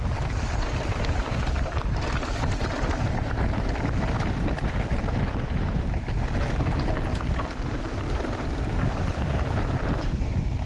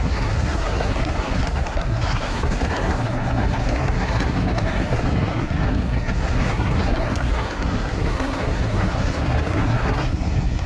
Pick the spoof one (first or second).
second